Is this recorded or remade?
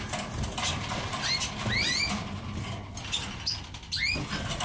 recorded